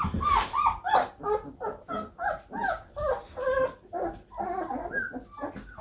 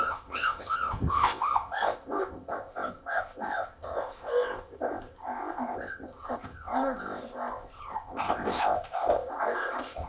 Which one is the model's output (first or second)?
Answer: second